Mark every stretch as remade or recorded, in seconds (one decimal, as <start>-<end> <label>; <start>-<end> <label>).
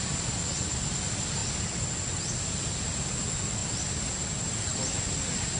0.0-5.6 recorded